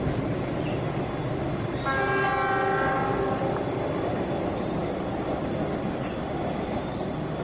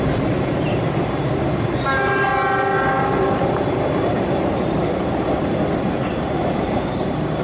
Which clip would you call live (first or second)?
first